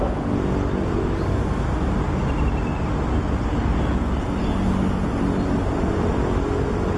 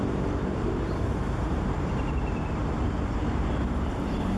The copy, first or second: second